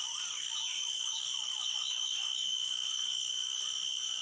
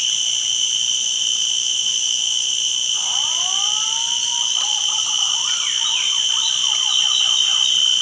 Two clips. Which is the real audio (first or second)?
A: second